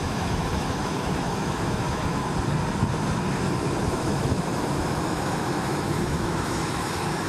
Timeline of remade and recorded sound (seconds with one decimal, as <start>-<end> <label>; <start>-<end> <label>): 0.0-2.2 remade; 2.2-3.9 recorded; 3.9-7.3 remade